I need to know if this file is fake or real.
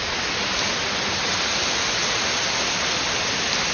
real